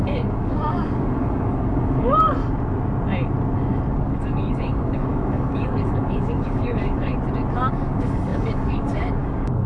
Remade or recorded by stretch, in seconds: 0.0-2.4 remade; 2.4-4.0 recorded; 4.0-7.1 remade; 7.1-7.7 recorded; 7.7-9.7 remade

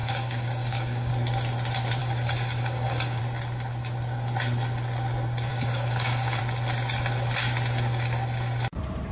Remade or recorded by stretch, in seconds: 0.0-1.1 remade; 1.1-2.0 recorded; 2.0-3.2 remade; 3.2-5.5 recorded; 5.5-6.4 remade; 6.4-9.1 recorded

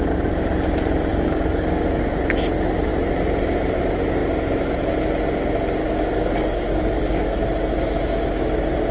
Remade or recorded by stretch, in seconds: 0.0-1.1 recorded; 1.1-2.2 remade; 2.2-5.8 recorded; 5.8-7.4 remade; 7.4-8.9 recorded

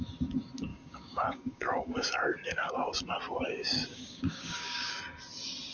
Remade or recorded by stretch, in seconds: 0.0-0.7 recorded; 0.7-2.7 remade; 2.7-3.9 recorded; 3.9-4.9 remade; 4.9-5.7 recorded

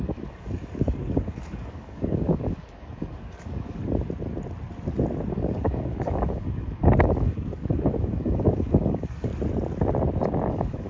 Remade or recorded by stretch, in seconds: 0.0-3.8 remade; 3.8-5.3 recorded; 5.3-9.3 remade; 9.3-10.5 recorded; 10.5-10.9 remade

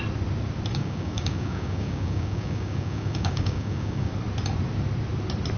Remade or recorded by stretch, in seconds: 0.0-0.7 recorded; 0.7-4.1 remade; 4.1-5.6 recorded

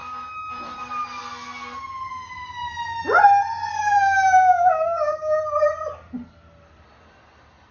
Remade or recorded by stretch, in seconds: 0.0-3.7 recorded; 3.7-5.4 remade; 5.4-7.7 recorded

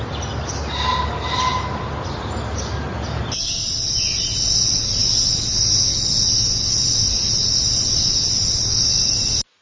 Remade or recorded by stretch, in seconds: 0.0-9.6 recorded